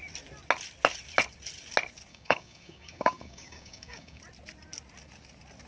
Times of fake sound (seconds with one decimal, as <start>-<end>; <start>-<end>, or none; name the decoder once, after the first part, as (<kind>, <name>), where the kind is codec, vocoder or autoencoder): 2.1-4.2 (codec, DAC)